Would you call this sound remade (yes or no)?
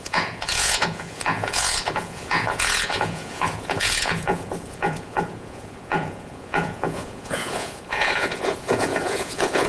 yes